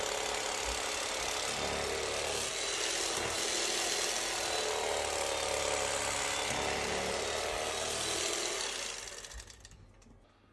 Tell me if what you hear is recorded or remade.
recorded